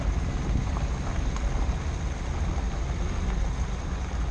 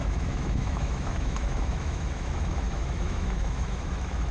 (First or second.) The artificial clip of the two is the second